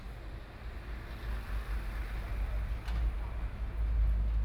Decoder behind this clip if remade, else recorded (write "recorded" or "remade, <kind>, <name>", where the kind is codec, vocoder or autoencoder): recorded